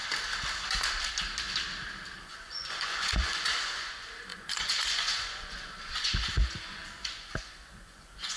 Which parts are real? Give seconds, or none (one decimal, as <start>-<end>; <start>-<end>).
0.0-2.2